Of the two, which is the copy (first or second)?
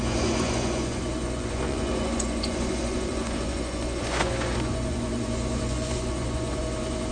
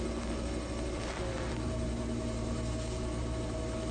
first